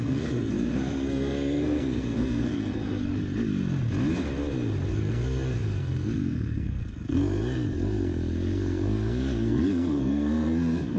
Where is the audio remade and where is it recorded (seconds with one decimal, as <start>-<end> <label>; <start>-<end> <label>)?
0.0-3.1 remade; 3.1-4.9 recorded; 4.9-11.0 remade